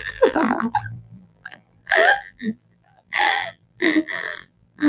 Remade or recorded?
remade